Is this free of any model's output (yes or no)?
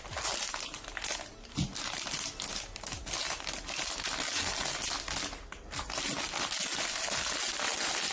yes